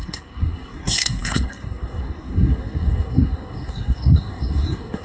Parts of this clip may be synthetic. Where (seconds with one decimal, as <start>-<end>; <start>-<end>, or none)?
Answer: 0.0-5.0